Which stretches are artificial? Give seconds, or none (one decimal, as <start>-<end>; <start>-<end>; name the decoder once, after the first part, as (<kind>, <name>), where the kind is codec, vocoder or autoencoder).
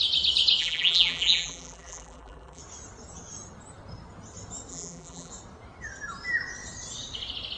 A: 0.6-2.6 (vocoder, BigVGAN v2); 4.7-5.3